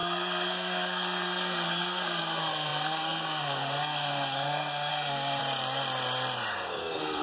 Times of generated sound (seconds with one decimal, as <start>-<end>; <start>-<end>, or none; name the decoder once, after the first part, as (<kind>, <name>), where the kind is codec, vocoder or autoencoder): 0.0-5.4 (codec, SNAC); 6.5-7.2